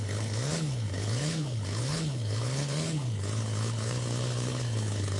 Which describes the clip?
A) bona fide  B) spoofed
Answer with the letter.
B